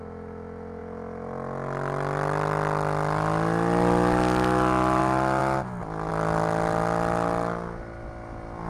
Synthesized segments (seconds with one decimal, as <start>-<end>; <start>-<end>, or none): none